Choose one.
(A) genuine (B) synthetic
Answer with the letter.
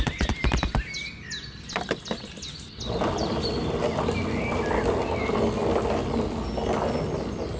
A